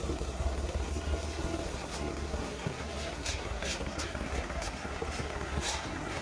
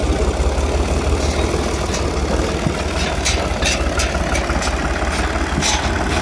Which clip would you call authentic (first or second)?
second